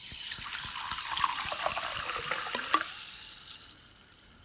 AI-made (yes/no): no